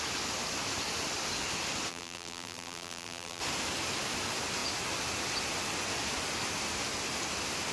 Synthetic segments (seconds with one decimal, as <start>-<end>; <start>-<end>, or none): 1.9-3.4